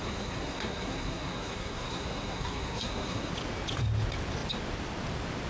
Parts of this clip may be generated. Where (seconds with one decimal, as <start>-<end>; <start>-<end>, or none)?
0.0-3.3